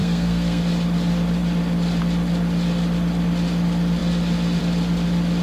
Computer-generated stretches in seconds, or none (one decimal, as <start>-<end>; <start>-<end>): 0.0-0.6